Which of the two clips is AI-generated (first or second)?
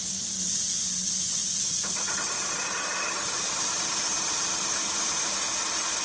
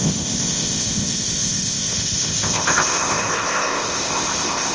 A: second